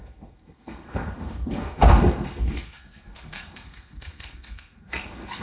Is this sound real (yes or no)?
no